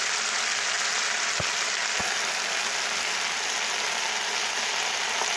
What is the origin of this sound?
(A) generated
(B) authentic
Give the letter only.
B